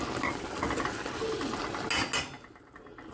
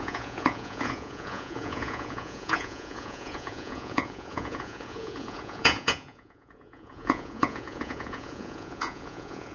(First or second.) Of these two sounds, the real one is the first